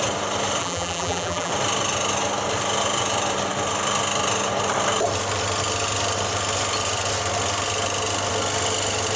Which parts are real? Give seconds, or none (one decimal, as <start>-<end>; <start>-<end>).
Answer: 0.0-0.6; 1.5-9.2